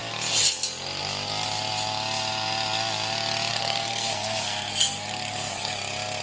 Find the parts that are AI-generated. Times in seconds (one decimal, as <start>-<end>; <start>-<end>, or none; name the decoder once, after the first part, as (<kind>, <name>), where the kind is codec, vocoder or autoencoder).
3.5-5.7 (codec, SNAC)